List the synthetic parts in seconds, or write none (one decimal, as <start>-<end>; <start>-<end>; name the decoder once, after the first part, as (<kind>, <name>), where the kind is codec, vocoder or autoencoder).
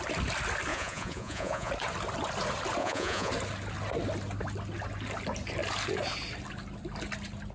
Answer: 0.7-1.7 (vocoder, Vocos); 2.8-3.3